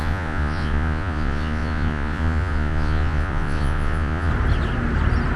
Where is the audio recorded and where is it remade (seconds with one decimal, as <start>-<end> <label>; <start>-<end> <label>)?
0.0-4.3 remade; 4.3-5.4 recorded